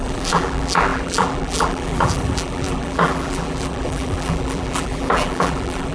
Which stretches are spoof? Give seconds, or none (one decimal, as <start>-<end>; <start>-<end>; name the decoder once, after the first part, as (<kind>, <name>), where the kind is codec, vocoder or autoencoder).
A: 0.0-5.9 (vocoder, BigVGAN v2)